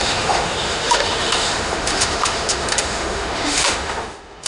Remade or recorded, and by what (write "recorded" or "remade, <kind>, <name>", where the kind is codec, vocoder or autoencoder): remade, autoencoder, DAC-VAE